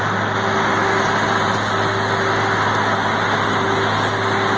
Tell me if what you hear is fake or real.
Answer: real